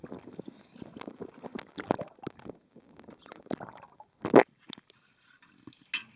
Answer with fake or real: real